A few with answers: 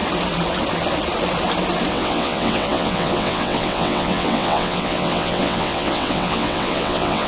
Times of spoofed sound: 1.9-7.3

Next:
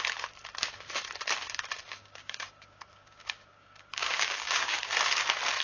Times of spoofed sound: 2.0-4.9

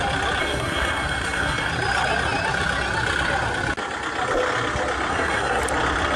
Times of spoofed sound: 0.4-1.7; 5.1-5.6